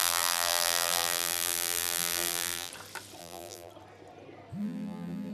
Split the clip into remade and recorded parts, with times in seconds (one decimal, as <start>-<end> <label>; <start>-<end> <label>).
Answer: 0.0-2.7 remade; 2.7-3.2 recorded; 3.2-3.7 remade; 3.7-4.6 recorded; 4.6-5.3 remade